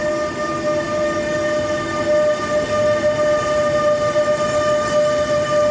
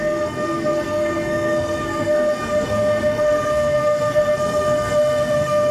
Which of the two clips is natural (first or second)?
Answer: first